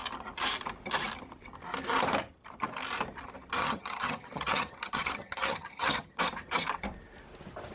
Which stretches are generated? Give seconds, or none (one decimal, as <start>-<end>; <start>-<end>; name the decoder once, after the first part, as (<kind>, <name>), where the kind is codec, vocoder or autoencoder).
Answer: 3.6-6.2 (vocoder, HiFi-GAN)